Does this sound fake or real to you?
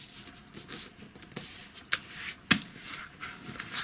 real